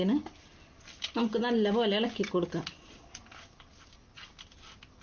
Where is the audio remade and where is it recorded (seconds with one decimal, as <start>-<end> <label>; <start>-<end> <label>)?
0.0-5.0 recorded